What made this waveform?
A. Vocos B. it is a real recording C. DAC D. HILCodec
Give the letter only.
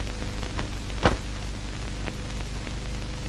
B